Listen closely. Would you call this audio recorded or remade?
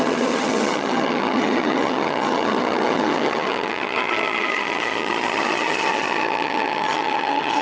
remade